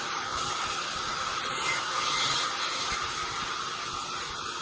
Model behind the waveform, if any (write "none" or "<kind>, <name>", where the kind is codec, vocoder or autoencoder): none